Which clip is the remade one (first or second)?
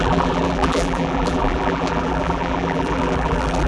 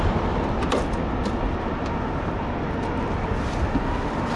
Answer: first